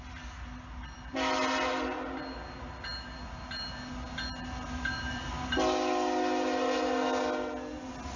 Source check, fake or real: real